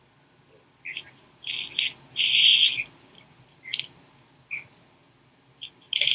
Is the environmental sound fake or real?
real